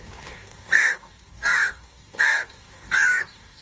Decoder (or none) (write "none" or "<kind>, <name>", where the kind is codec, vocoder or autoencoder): codec, DAC